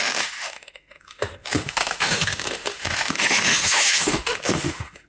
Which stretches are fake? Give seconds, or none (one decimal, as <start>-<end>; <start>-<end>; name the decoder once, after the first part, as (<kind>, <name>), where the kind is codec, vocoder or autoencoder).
0.0-5.1 (autoencoder, DAC-VAE)